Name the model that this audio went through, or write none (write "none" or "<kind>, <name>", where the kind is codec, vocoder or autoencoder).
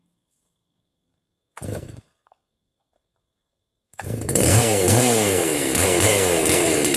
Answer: codec, SNAC